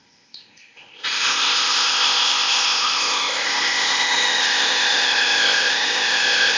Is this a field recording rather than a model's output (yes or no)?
no